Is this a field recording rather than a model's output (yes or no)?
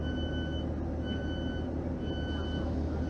yes